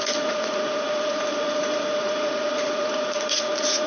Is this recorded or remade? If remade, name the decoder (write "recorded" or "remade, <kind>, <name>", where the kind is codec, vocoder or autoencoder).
remade, vocoder, Vocos